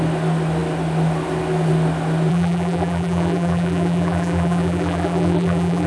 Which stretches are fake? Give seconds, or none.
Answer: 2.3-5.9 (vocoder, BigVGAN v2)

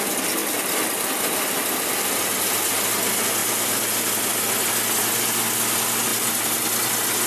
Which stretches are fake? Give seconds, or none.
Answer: 0.4-2.2 (vocoder, BigVGAN v2); 3.4-4.5; 6.1-6.7

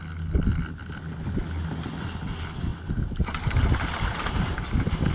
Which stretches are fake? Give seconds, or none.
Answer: 2.7-5.1 (vocoder, BigVGAN v2)

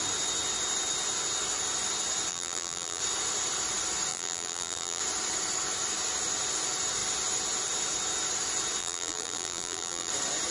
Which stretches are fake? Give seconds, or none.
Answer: 2.3-3.0 (vocoder, BigVGAN v2); 4.1-5.0; 8.8-10.1